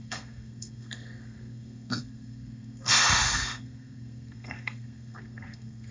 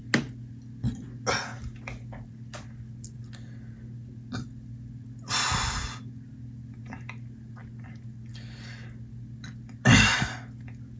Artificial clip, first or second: first